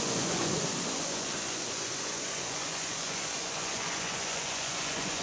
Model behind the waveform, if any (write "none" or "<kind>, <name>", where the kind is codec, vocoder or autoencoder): vocoder, Vocos